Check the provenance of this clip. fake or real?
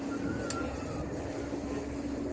real